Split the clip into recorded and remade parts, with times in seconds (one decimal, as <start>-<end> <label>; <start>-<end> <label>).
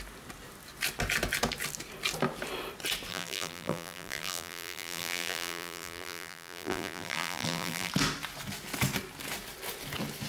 0.0-3.1 recorded; 3.1-7.9 remade; 7.9-10.3 recorded